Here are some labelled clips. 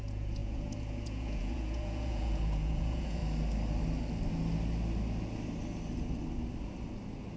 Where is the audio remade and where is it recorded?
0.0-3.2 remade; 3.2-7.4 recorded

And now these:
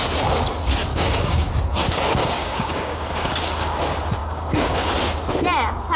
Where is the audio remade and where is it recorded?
0.0-0.9 recorded; 0.9-1.5 remade; 1.5-2.2 recorded; 2.2-3.4 remade; 3.4-4.2 recorded; 4.2-4.9 remade; 4.9-6.0 recorded